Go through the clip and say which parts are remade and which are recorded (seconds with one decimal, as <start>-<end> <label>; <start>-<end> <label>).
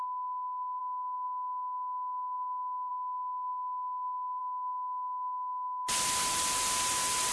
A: 0.0-7.3 recorded